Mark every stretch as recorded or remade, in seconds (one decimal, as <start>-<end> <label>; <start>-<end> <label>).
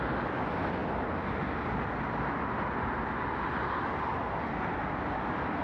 0.0-5.6 recorded